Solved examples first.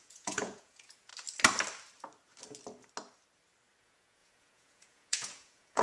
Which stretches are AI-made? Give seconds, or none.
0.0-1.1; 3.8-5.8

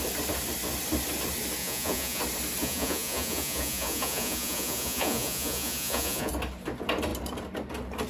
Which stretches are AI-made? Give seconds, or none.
1.6-2.2; 2.6-6.3

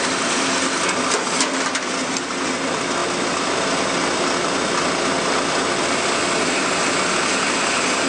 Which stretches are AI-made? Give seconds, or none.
none